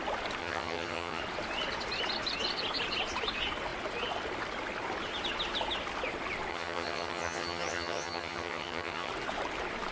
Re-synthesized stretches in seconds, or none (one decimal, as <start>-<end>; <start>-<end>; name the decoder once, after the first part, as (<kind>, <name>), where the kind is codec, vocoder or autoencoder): 0.4-1.2 (vocoder, HiFi-GAN); 6.5-9.1